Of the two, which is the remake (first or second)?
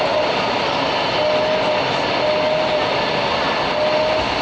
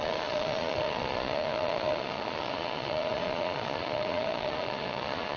second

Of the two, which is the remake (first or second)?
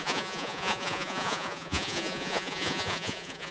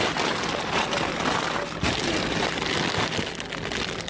first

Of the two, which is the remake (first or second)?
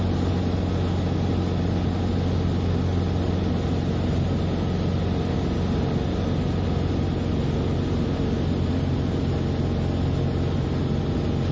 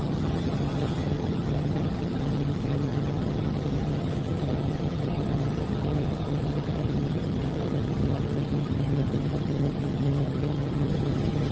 second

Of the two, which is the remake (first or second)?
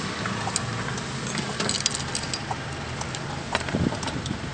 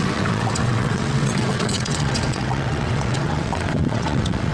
second